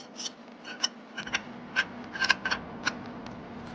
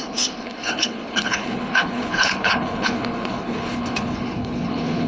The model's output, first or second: second